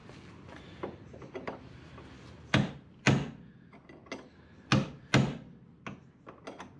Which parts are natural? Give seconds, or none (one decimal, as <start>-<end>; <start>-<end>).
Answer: 0.0-6.8